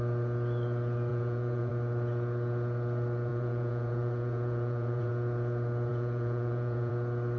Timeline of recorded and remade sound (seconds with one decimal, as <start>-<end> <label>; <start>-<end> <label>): 0.0-1.1 recorded; 1.1-1.7 remade; 1.7-3.3 recorded; 3.3-5.1 remade; 5.1-5.9 recorded; 5.9-6.9 remade; 6.9-7.4 recorded